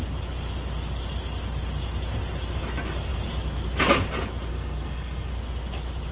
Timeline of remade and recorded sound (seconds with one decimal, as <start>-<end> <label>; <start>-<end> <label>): 0.0-4.5 recorded; 4.5-5.3 remade; 5.3-6.1 recorded